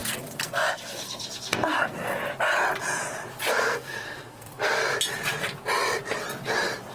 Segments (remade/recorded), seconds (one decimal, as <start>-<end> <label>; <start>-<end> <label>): 0.0-2.2 remade; 2.2-3.5 recorded; 3.5-4.8 remade; 4.8-6.9 recorded